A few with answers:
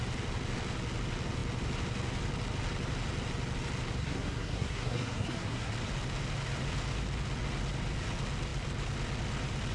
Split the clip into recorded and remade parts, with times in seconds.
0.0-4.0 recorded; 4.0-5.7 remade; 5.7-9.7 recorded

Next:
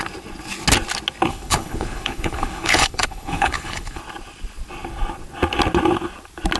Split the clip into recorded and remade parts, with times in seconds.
0.0-1.3 recorded; 1.3-4.0 remade; 4.0-6.6 recorded

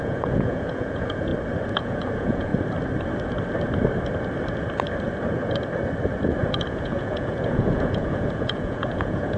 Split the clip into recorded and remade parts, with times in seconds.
0.0-1.3 remade; 1.3-1.8 recorded; 1.8-2.5 remade; 2.5-6.7 recorded; 6.7-9.4 remade